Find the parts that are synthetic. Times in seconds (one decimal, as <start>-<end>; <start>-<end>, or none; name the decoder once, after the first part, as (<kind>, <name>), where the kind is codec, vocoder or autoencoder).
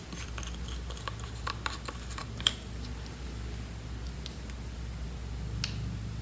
none